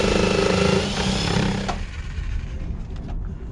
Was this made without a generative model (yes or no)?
yes